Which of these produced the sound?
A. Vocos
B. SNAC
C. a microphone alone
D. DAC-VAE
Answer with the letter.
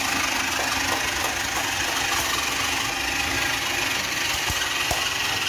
C